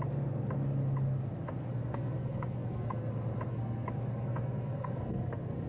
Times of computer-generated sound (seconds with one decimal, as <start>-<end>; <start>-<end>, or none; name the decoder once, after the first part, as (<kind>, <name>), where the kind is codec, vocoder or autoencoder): 1.7-3.1 (codec, SNAC); 3.5-5.7